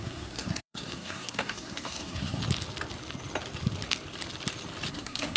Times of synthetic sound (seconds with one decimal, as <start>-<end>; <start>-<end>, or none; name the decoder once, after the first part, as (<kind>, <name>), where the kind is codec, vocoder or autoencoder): 0.0-2.4 (codec, SNAC); 4.9-5.4